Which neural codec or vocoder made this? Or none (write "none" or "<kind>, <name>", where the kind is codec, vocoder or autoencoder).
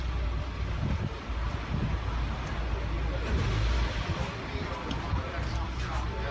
none